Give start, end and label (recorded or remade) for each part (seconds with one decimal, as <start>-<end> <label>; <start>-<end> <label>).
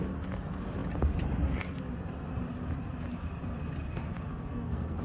0.0-4.3 recorded; 4.3-5.0 remade